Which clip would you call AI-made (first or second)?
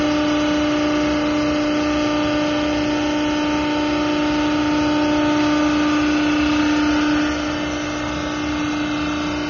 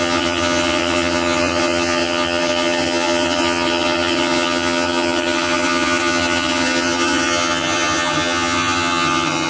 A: second